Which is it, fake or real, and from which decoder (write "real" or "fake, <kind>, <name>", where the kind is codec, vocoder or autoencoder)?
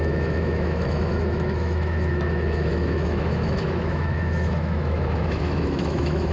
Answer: fake, autoencoder, DAC-VAE